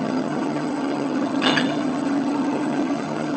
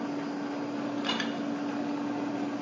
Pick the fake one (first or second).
first